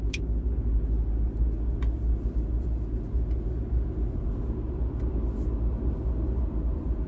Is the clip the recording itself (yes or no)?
yes